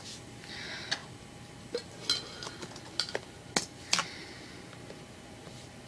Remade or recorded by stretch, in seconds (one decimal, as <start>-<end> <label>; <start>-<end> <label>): 0.0-5.9 recorded